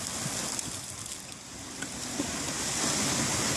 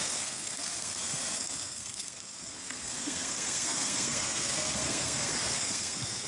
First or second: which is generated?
second